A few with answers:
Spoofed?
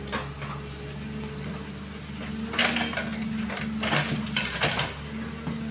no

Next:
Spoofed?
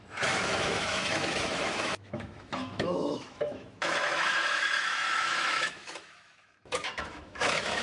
yes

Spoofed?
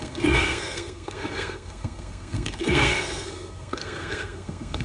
yes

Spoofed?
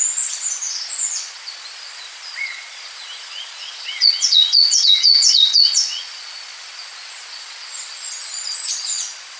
yes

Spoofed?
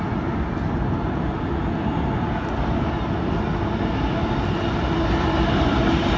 no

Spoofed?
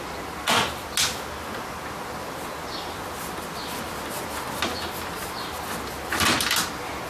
no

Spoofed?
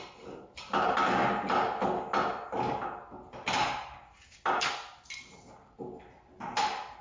no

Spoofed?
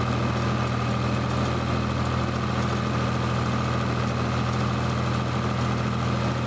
no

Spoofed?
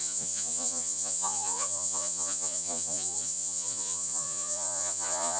yes